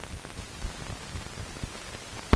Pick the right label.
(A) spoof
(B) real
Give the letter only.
B